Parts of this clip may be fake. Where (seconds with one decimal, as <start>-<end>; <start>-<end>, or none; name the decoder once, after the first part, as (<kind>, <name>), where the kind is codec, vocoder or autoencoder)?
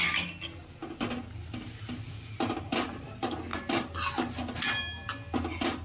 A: none